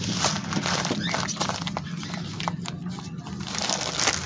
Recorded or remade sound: recorded